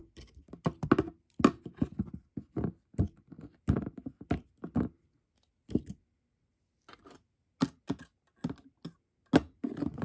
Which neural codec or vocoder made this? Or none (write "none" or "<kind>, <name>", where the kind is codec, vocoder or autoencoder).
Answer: none